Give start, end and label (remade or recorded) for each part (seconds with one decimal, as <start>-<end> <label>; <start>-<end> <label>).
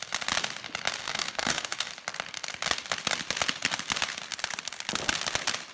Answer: 0.0-1.0 recorded; 1.0-1.9 remade; 1.9-5.7 recorded